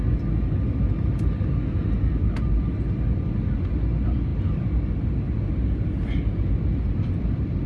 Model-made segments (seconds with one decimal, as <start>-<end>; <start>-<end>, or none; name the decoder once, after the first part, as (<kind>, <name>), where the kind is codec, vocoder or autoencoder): none